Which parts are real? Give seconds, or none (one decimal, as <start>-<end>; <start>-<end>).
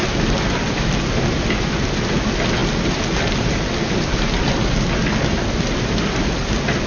0.0-6.9